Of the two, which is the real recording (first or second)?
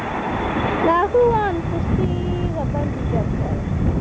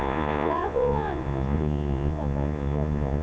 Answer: first